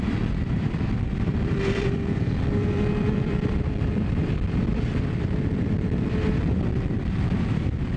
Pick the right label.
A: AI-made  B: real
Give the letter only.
A